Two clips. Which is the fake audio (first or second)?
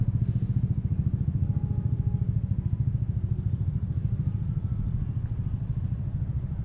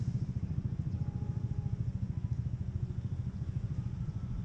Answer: second